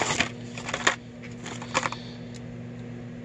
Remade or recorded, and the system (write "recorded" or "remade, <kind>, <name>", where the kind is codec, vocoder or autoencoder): recorded